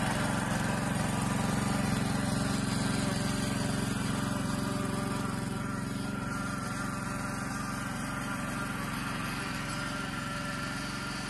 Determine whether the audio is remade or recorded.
recorded